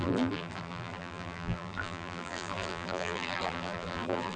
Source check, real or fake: fake